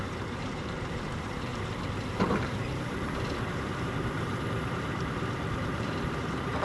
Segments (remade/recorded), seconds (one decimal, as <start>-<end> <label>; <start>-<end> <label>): 0.0-1.5 remade; 1.5-2.1 recorded; 2.1-6.6 remade